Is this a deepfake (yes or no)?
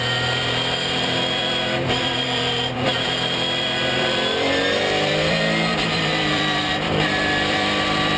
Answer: yes